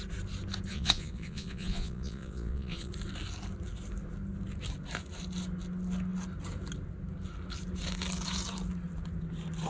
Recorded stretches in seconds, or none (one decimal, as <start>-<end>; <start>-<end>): 0.0-0.7; 2.9-9.7

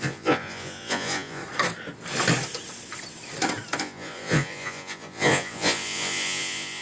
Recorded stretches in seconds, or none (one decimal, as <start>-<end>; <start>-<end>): 1.4-3.8

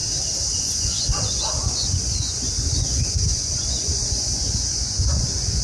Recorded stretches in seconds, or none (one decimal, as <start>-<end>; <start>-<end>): 0.0-0.6

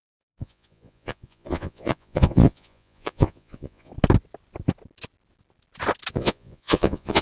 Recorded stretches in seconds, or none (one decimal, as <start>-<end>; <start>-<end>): 3.9-6.1

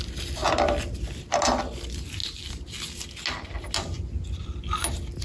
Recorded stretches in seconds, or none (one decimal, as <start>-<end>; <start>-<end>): 0.0-5.2